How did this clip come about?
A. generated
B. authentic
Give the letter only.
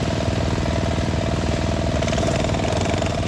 B